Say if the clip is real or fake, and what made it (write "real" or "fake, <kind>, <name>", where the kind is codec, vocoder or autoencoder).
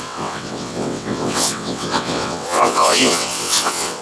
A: fake, vocoder, WaveNeXt